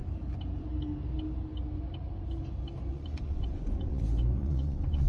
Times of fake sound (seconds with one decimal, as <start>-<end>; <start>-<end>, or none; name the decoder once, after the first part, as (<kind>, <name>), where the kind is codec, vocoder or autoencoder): 2.9-4.0 (vocoder, Vocos); 4.4-5.1